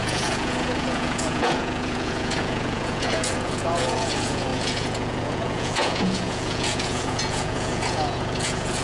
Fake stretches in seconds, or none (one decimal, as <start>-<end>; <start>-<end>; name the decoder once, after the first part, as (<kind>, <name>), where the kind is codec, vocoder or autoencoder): 0.0-8.8 (vocoder, Vocos)